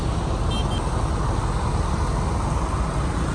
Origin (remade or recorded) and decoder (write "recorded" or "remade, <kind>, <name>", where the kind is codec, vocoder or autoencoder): recorded